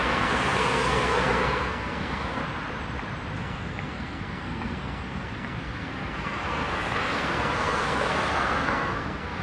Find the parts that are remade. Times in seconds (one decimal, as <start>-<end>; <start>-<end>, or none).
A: 0.0-2.4; 3.4-9.4